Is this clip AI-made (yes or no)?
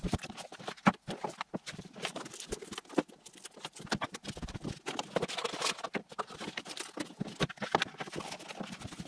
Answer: no